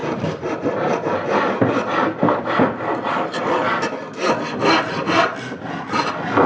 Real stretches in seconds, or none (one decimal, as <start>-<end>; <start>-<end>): 3.9-6.5